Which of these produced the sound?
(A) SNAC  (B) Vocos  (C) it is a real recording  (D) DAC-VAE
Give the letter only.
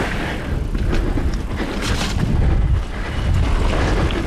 C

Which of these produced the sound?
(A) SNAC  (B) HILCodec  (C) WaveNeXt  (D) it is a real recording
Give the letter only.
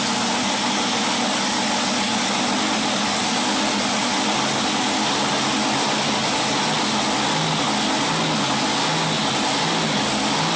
D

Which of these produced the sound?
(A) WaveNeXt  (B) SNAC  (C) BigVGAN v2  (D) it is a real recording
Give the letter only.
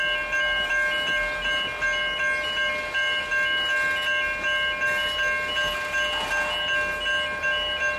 D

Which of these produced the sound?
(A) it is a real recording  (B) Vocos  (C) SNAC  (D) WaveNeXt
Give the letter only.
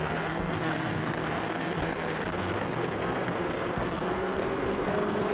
C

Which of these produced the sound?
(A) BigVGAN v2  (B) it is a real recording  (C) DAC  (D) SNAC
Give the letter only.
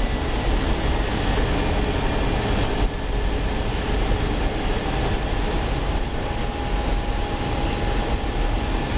B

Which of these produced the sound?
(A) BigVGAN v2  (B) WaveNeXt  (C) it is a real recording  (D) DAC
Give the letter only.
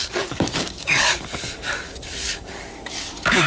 D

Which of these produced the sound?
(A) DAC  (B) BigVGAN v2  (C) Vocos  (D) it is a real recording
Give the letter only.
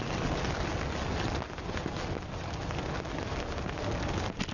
D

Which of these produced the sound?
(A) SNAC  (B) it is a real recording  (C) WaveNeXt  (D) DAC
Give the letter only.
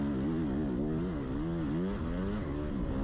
B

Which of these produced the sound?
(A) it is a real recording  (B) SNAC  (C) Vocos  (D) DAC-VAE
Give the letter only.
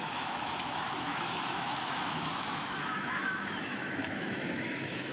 D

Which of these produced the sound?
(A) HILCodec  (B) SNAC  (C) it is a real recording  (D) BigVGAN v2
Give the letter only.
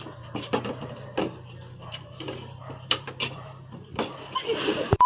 D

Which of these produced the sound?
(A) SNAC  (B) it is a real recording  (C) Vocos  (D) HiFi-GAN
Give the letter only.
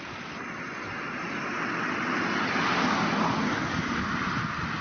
B